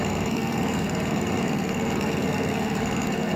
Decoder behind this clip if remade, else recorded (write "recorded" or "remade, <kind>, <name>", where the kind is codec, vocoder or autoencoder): remade, codec, SNAC